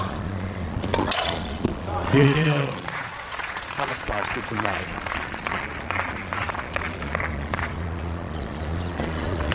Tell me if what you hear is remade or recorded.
remade